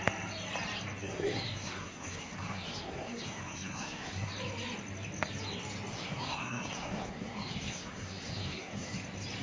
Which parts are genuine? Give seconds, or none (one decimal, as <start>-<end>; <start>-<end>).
0.0-1.0; 4.3-5.9; 9.0-9.4